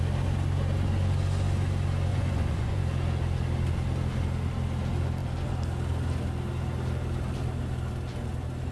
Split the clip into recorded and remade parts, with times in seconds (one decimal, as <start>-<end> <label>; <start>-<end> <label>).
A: 0.0-2.1 recorded; 2.1-2.8 remade; 2.8-8.7 recorded